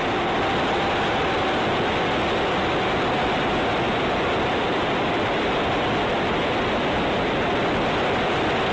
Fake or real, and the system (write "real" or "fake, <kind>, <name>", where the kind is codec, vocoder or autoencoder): real